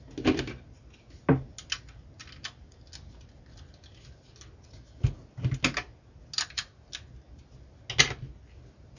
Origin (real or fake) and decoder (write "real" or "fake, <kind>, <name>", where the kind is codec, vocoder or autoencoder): real